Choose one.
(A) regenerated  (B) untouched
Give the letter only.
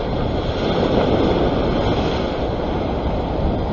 B